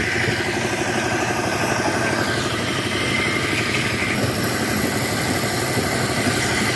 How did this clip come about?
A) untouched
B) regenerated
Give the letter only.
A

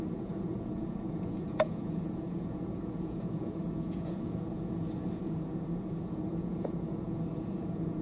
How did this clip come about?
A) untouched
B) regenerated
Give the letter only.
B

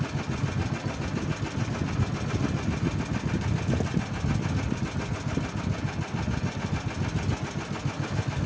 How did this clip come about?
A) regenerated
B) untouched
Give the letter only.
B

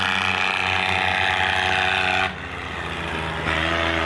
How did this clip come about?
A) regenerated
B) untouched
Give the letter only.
B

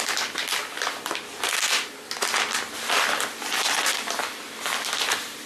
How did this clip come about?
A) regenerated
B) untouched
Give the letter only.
B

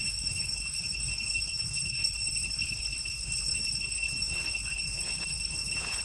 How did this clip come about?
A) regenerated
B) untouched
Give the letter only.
A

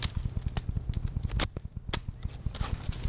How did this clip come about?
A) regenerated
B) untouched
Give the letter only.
B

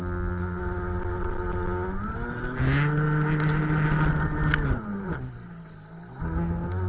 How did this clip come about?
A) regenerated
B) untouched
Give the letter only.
B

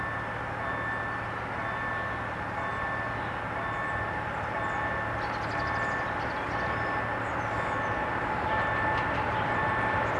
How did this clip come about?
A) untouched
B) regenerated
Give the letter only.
A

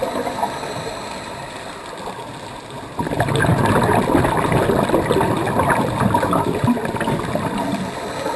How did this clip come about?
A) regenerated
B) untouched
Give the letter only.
B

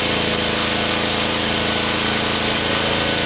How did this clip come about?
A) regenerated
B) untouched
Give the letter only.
B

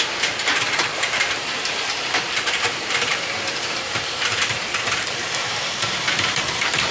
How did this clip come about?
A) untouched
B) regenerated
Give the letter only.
B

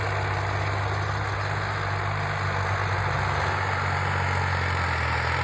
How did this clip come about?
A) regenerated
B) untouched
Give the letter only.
B